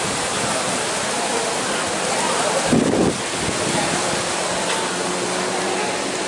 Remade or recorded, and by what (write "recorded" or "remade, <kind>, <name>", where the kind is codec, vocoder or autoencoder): recorded